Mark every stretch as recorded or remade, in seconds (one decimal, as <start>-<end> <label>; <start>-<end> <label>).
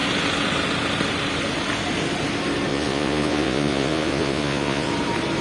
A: 0.0-2.7 recorded; 2.7-4.9 remade; 4.9-5.4 recorded